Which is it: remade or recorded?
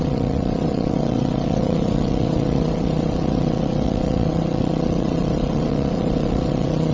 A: remade